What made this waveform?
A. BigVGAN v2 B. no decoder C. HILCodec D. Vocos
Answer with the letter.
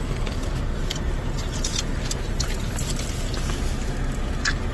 B